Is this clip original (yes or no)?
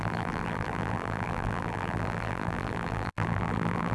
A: no